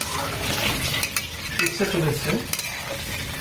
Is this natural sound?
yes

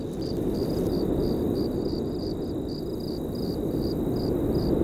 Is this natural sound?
no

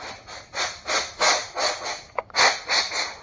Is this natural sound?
yes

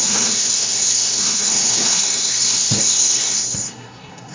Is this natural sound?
no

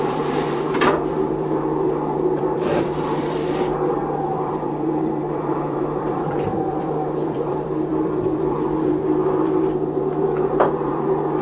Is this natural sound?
no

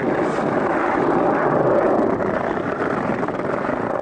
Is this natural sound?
yes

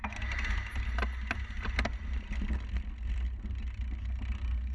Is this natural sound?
yes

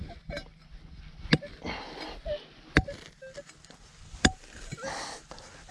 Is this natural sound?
yes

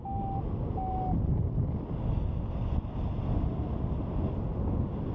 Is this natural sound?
yes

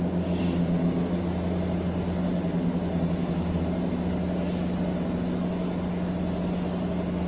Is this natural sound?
yes